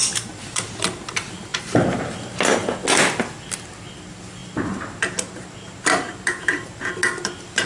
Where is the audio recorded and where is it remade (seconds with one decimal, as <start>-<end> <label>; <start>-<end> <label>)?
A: 0.0-0.6 remade; 0.6-1.5 recorded; 1.5-2.1 remade; 2.1-4.4 recorded; 4.4-6.8 remade; 6.8-7.7 recorded